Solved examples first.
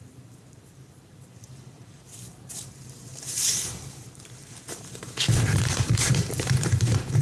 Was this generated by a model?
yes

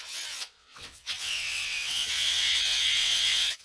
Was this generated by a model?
yes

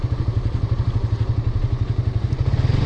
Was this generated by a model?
yes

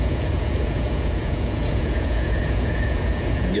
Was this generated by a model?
yes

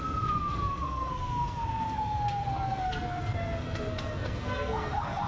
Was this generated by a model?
yes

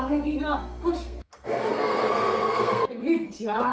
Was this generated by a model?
yes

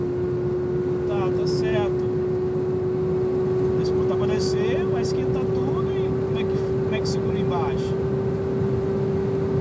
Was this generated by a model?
no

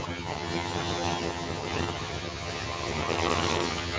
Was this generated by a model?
yes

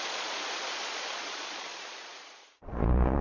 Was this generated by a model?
yes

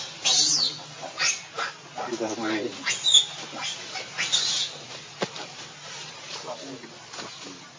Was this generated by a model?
no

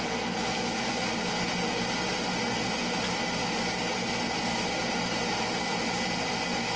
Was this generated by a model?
no